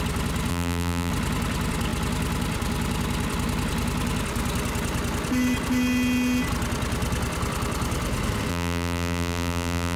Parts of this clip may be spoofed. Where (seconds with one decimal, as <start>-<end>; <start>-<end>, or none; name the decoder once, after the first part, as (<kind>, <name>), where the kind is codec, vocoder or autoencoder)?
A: 0.5-1.1 (vocoder, BigVGAN v2); 8.5-10.0

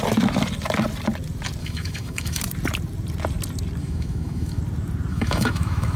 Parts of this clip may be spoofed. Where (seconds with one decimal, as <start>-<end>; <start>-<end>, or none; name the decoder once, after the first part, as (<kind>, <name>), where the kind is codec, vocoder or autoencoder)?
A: 1.6-2.4 (autoencoder, DAC-VAE); 3.8-4.6; 5.1-6.0

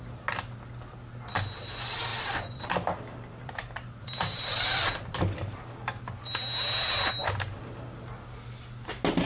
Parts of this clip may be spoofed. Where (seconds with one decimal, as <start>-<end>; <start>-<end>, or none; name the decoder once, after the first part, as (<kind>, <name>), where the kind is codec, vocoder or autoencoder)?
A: 2.1-6.0 (vocoder, BigVGAN v2)

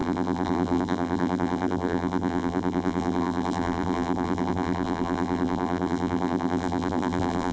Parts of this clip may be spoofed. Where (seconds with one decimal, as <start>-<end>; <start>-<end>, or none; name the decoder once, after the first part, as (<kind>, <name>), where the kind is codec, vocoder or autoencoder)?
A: 0.0-7.5 (vocoder, BigVGAN v2)